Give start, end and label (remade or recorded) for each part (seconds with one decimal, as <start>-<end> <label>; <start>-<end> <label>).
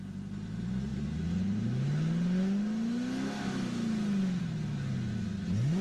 0.0-5.8 recorded